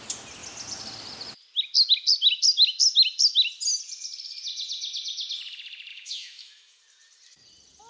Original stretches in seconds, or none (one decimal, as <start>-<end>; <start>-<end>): 0.0-5.9; 6.8-7.9

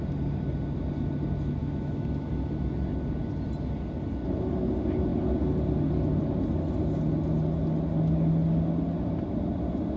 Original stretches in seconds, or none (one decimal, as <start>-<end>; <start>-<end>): 0.0-1.6; 2.3-10.0

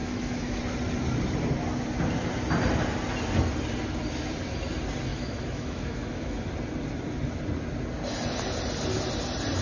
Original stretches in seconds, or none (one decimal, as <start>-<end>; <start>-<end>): 0.6-5.1; 6.5-9.6

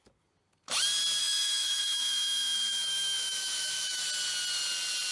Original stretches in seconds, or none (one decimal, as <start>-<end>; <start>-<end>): 0.0-1.2; 4.0-5.1

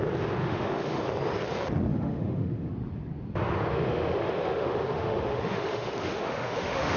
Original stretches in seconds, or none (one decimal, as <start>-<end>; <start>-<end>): 0.0-0.4; 1.0-1.9; 2.7-3.7

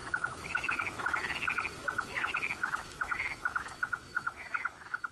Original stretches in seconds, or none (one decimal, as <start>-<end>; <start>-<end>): 1.1-1.8

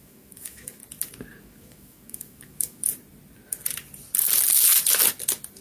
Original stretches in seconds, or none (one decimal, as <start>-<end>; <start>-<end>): 0.8-1.4; 2.9-5.6